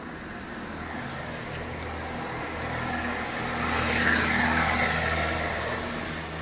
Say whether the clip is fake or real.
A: real